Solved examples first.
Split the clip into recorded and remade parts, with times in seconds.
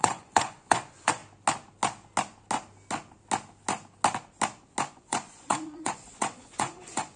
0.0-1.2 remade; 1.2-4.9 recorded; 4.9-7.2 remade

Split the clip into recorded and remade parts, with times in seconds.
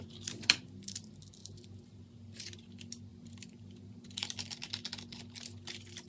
0.0-1.4 recorded; 1.4-2.0 remade; 2.0-3.1 recorded; 3.1-4.3 remade; 4.3-6.1 recorded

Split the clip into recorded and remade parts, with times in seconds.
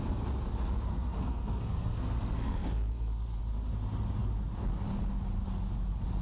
0.0-0.9 recorded; 0.9-3.4 remade; 3.4-6.2 recorded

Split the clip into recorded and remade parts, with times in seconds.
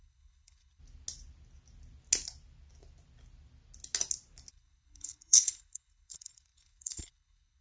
0.0-0.8 remade; 0.8-4.5 recorded; 4.5-7.6 remade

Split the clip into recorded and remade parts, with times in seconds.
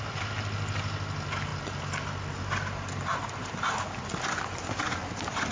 0.0-5.5 recorded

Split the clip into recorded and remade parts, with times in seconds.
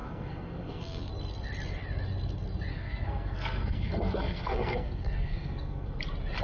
0.0-1.1 remade; 1.1-2.7 recorded; 2.7-6.0 remade; 6.0-6.4 recorded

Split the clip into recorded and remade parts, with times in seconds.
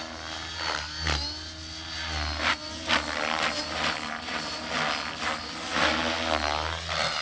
0.0-7.2 recorded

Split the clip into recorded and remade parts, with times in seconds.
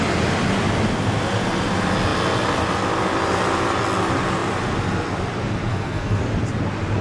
0.0-5.7 recorded; 5.7-6.2 remade; 6.2-7.0 recorded